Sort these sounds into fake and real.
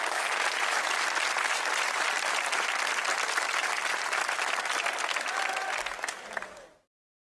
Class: real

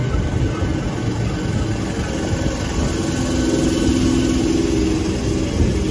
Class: real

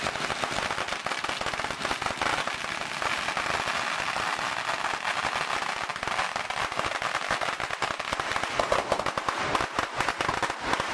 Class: real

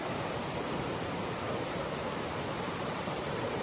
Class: fake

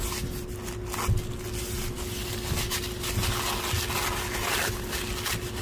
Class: real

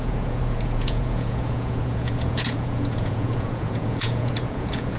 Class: fake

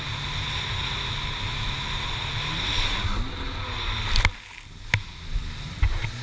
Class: real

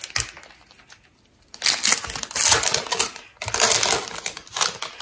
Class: real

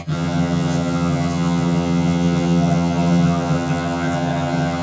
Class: fake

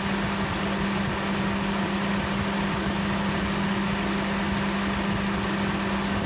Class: real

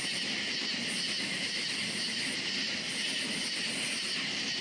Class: real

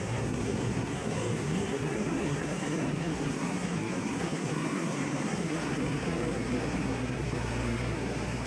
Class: fake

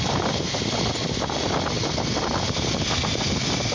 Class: real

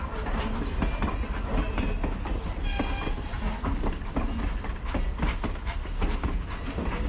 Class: real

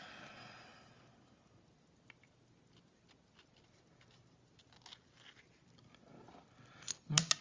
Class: real